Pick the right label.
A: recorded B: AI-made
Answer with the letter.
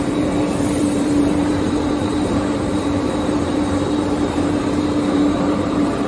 B